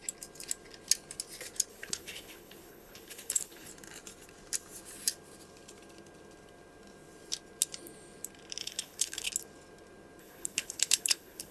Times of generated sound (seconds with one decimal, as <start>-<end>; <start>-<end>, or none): 1.7-3.7; 8.6-9.3; 10.2-11.5